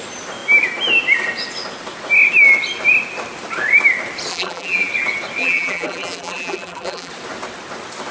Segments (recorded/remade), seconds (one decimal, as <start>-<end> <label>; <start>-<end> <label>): 0.0-4.3 recorded; 4.3-4.9 remade; 4.9-5.4 recorded; 5.4-7.1 remade; 7.1-8.1 recorded